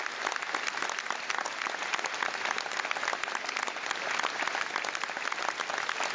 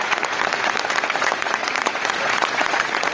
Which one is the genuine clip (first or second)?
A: first